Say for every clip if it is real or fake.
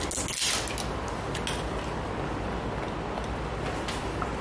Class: real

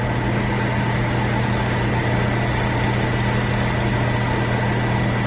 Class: real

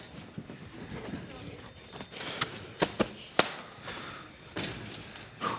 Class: fake